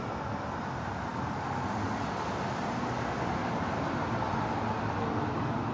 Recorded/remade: recorded